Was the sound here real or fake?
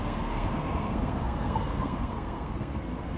fake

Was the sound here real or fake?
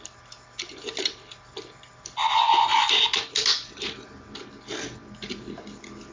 real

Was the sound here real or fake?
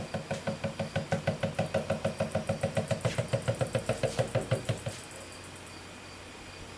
real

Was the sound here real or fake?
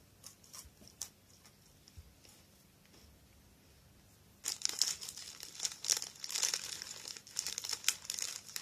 real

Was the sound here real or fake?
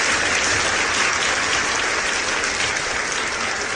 real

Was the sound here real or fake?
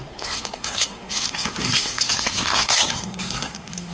fake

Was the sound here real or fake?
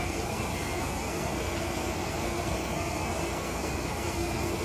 fake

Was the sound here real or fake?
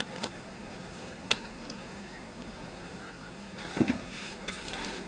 fake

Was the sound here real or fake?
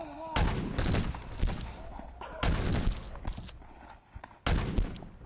real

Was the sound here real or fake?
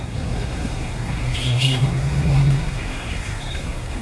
fake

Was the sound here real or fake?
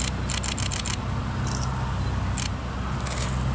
real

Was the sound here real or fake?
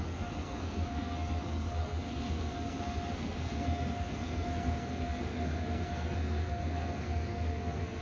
fake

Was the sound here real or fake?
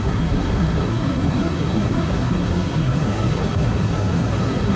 fake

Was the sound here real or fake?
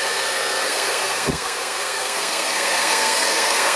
fake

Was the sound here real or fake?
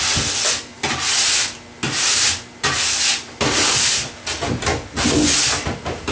real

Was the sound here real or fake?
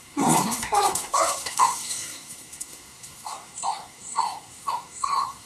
fake